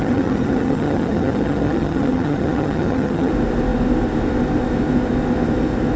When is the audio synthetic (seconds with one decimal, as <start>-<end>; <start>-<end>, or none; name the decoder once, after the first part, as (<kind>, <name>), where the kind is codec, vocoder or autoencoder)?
0.0-3.3 (vocoder, HiFi-GAN)